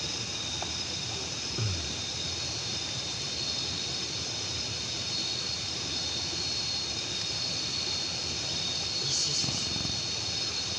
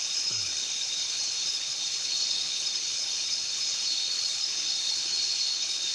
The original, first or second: first